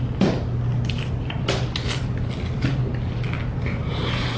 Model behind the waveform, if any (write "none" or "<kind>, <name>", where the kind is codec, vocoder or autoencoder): none